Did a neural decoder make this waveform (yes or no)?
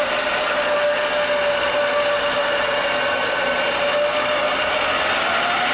no